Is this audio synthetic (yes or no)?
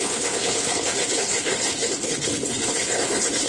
yes